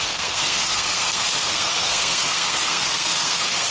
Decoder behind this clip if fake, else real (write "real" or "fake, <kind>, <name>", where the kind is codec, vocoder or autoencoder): fake, codec, SNAC